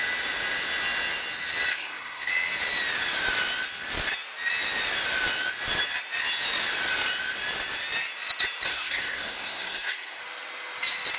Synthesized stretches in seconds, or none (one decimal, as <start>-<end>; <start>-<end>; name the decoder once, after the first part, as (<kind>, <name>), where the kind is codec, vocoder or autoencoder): 1.7-2.3 (codec, SNAC); 8.7-10.2